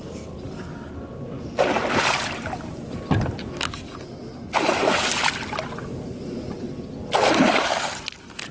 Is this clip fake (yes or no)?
no